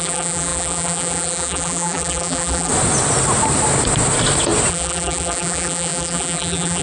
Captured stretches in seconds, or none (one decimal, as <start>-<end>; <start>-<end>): 2.7-4.7